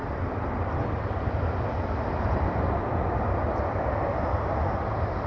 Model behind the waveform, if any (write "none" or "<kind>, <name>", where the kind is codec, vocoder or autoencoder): none